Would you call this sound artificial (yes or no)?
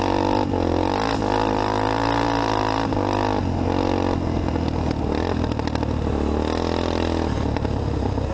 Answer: no